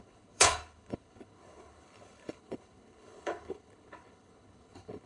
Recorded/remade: remade